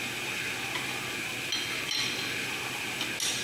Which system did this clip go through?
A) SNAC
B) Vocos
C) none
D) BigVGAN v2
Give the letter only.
C